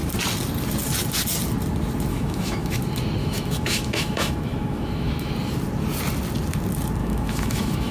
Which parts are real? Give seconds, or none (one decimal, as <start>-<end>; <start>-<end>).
0.0-2.1; 2.8-3.2; 5.3-7.0